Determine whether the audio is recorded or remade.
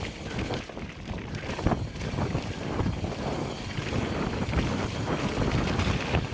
recorded